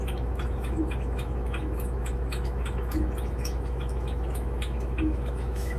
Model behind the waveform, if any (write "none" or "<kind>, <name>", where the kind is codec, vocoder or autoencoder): autoencoder, DAC-VAE